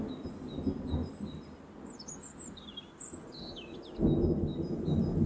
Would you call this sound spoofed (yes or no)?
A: no